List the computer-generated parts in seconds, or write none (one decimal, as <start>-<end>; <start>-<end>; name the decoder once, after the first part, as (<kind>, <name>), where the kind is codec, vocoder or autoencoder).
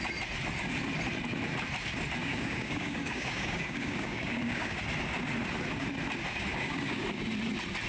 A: 2.2-4.8 (codec, DAC); 6.5-7.0